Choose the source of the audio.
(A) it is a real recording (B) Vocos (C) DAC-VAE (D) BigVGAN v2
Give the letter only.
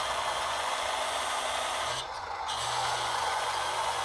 B